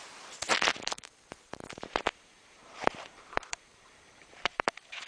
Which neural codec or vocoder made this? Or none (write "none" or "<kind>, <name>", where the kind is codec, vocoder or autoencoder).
vocoder, BigVGAN v2